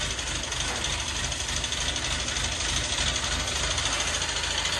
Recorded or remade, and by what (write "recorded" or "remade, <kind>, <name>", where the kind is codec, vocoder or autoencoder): recorded